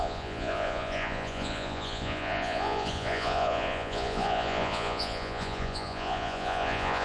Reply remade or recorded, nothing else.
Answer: remade